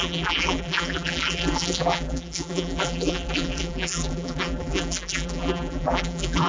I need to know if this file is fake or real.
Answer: fake